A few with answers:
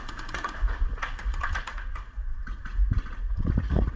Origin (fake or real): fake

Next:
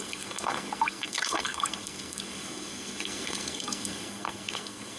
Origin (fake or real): fake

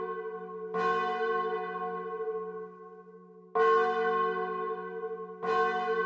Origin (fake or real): real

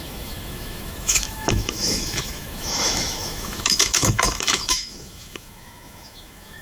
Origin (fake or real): fake